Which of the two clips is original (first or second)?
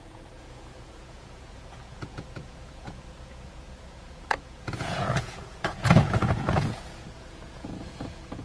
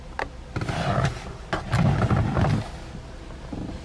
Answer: second